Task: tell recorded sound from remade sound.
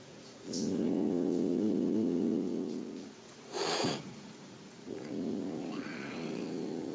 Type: remade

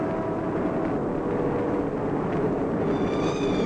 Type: recorded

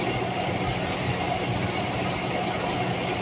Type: recorded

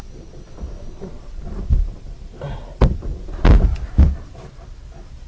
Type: recorded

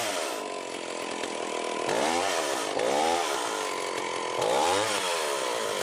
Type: recorded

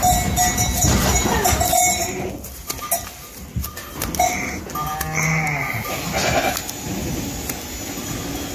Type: recorded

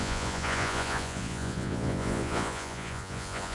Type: remade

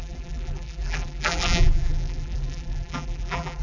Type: remade